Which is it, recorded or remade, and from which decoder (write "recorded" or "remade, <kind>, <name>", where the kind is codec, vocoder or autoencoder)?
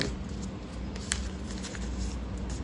recorded